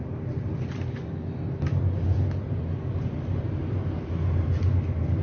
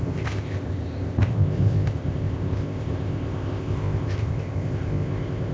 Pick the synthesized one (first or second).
second